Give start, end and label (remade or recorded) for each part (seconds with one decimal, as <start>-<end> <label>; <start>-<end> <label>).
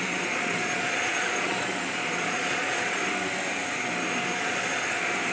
0.0-3.0 remade; 3.0-4.4 recorded; 4.4-5.3 remade